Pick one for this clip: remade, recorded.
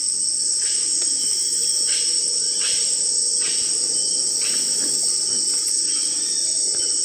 recorded